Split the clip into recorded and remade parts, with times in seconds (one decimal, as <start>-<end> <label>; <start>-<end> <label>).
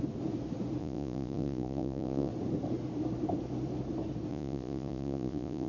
0.0-0.8 recorded; 0.8-2.3 remade; 2.3-4.3 recorded; 4.3-5.7 remade